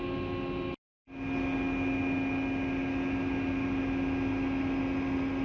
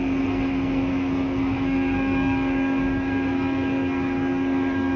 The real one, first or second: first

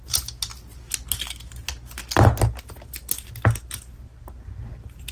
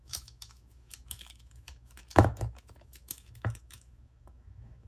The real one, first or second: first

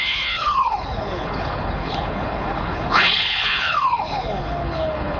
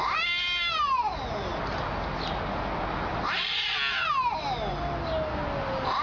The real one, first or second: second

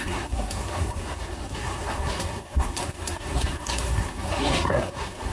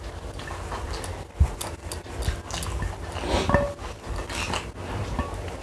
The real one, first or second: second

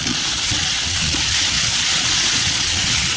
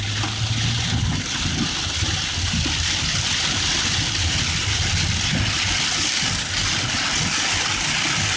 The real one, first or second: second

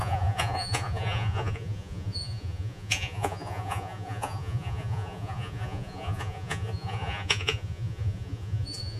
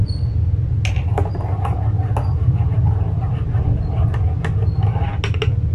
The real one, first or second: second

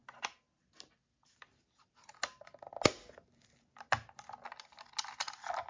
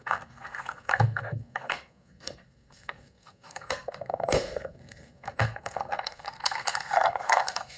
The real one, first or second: first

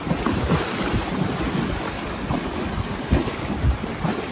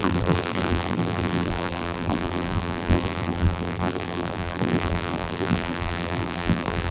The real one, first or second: first